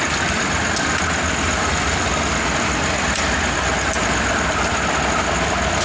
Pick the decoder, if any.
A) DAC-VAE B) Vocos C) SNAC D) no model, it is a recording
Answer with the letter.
D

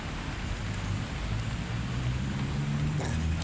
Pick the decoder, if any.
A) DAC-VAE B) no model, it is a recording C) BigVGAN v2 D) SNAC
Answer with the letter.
B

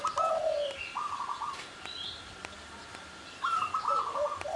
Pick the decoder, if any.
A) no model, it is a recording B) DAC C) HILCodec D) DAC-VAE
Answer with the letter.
A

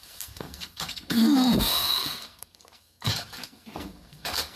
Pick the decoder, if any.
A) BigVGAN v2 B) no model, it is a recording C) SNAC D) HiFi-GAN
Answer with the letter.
C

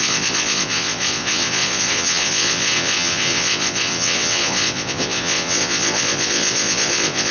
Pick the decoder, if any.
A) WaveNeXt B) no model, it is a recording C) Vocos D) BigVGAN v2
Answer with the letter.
A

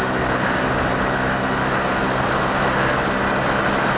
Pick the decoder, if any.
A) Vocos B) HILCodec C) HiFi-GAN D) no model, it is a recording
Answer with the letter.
D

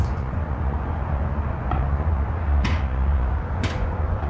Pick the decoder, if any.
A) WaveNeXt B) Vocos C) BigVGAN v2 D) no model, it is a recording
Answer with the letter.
B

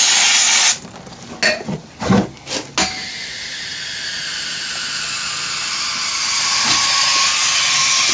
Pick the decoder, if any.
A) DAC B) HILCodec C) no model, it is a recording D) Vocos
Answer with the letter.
C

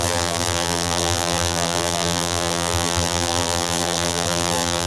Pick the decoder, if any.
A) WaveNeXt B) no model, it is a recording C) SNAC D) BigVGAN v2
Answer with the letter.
D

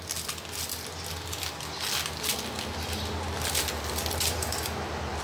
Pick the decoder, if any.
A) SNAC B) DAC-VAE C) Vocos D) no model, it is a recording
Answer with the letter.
D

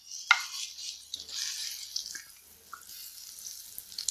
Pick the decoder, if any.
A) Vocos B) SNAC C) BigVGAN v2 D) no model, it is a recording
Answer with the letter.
D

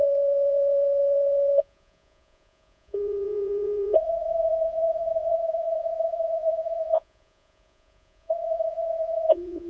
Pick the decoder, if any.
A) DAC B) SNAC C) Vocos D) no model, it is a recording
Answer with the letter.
C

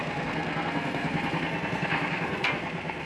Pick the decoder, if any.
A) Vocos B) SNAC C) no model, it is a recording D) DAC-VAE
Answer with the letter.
B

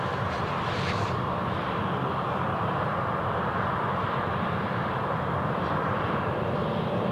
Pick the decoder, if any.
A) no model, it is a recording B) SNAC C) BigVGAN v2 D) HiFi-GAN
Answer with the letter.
C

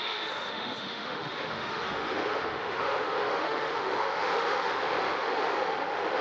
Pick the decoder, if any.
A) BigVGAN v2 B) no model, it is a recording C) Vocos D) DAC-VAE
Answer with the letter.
D